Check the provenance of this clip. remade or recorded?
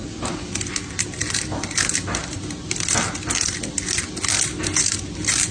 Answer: recorded